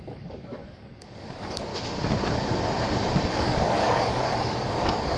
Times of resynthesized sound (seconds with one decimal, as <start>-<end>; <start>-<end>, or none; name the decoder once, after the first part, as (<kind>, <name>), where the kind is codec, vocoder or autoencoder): 0.0-1.7 (codec, DAC); 3.3-5.2